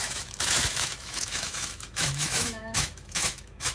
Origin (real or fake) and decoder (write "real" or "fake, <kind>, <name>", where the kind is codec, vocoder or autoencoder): fake, autoencoder, DAC-VAE